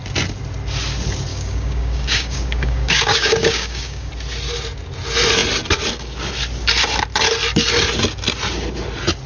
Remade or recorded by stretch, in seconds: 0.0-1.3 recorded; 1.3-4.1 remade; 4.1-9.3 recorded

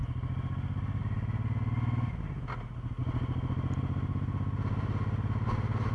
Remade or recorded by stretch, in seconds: 0.0-5.9 recorded

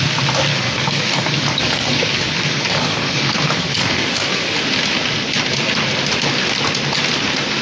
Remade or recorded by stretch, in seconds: 0.0-0.5 recorded; 0.5-4.6 remade; 4.6-7.6 recorded

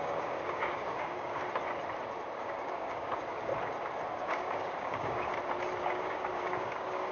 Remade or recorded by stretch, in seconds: 0.0-1.4 remade; 1.4-2.4 recorded; 2.4-3.5 remade; 3.5-4.1 recorded; 4.1-5.3 remade; 5.3-5.8 recorded; 5.8-7.1 remade

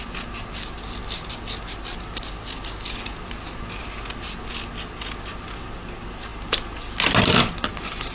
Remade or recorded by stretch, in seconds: 0.0-8.1 recorded

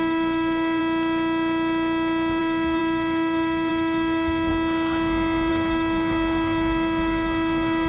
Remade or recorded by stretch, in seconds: 0.0-0.8 remade; 0.8-2.4 recorded; 2.4-4.5 remade; 4.5-5.5 recorded; 5.5-7.9 remade

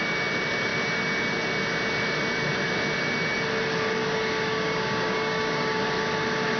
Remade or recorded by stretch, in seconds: 0.0-4.0 recorded; 4.0-5.8 remade; 5.8-6.6 recorded